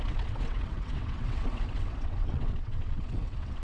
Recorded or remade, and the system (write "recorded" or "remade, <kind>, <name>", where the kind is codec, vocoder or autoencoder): remade, vocoder, WaveNeXt